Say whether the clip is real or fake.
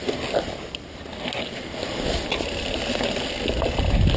real